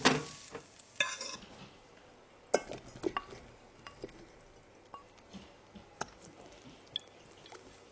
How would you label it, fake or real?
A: real